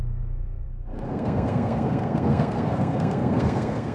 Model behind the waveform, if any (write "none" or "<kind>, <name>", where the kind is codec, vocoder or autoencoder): codec, SNAC